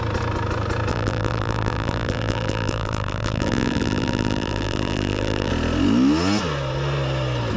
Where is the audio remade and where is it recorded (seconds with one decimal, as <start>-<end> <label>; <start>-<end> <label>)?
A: 0.0-0.9 recorded; 0.9-5.5 remade; 5.5-7.6 recorded